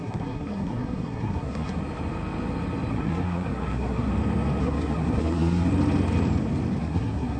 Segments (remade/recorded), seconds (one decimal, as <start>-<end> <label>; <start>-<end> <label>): 0.0-1.8 remade; 1.8-2.9 recorded; 2.9-4.1 remade; 4.1-4.6 recorded; 4.6-5.7 remade; 5.7-6.8 recorded; 6.8-7.4 remade